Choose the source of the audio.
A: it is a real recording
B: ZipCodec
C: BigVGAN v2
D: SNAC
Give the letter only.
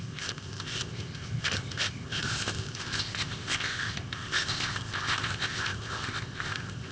B